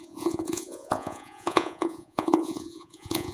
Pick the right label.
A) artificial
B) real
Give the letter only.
A